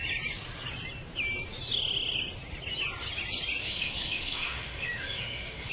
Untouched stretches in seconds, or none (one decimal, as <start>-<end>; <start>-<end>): 0.0-3.6